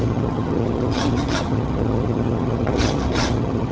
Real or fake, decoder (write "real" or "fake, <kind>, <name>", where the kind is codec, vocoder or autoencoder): fake, vocoder, HiFi-GAN